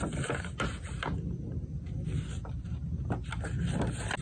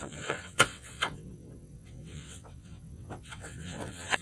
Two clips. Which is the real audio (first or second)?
first